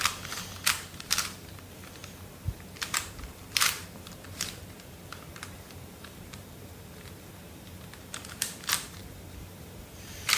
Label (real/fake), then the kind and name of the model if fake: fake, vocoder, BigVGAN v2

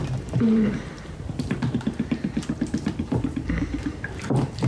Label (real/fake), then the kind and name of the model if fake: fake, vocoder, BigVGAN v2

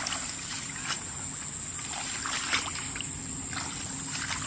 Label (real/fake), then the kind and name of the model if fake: real